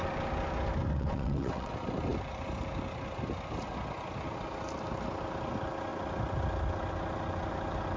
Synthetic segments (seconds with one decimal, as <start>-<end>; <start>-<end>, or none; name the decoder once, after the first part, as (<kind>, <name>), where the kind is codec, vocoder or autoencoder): 0.9-1.7 (vocoder, WaveNeXt)